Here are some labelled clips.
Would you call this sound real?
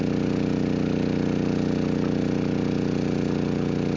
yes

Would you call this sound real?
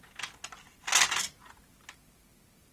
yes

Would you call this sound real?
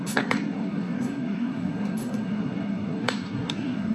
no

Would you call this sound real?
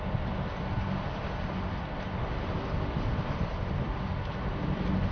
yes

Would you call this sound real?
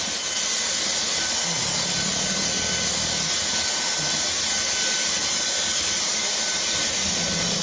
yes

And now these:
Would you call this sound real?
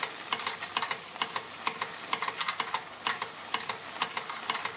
yes